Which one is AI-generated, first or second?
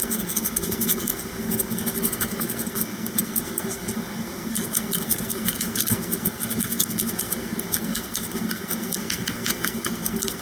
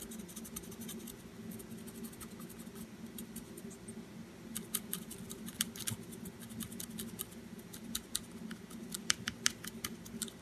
first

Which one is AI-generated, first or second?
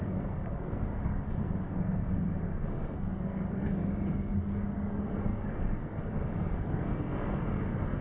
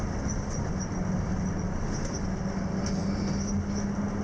first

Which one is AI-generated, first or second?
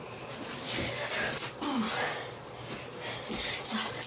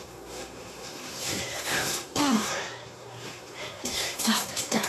second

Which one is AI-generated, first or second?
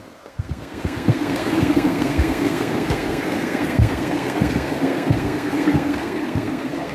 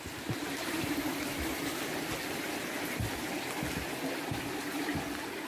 first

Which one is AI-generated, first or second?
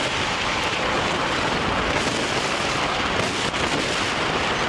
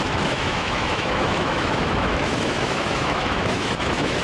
second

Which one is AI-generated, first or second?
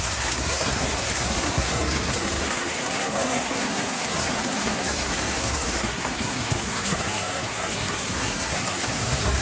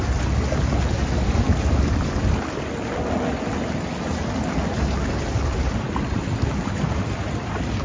first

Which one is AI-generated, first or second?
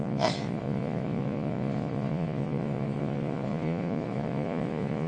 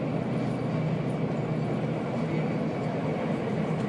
first